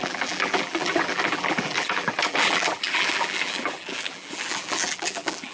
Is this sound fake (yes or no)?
yes